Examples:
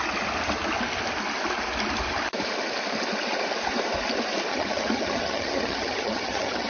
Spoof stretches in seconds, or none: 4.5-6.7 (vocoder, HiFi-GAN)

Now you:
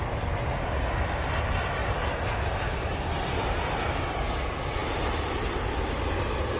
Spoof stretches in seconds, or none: none

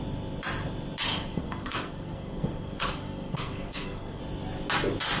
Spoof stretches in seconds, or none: 1.1-4.2 (codec, SNAC)

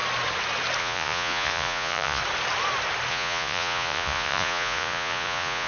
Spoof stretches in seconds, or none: 0.8-2.2 (vocoder, Vocos); 3.1-5.7

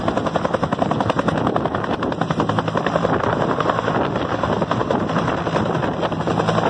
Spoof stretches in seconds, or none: none

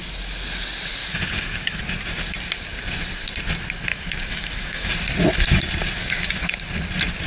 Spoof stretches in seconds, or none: 1.0-1.8 (autoencoder, DAC-VAE); 3.9-4.9

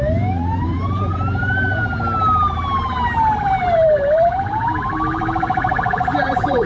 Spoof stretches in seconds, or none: 0.0-1.4 (vocoder, BigVGAN v2); 3.4-6.7